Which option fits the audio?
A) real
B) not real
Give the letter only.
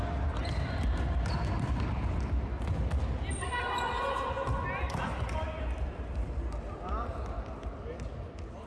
A